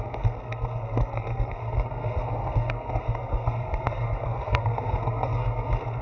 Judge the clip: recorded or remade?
remade